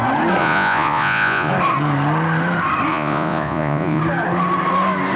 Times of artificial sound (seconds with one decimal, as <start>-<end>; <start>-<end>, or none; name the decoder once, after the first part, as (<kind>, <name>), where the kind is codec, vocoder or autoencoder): 0.4-1.5 (vocoder, Vocos); 2.9-4.0